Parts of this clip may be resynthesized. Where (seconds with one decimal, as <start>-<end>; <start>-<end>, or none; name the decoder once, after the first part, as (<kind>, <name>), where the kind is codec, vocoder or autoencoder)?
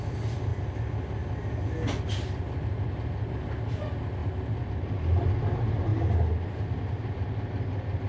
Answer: none